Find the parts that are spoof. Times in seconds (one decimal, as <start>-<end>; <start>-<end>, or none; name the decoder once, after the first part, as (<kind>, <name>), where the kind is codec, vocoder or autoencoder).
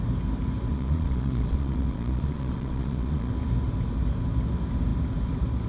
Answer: 0.7-3.3 (vocoder, Vocos)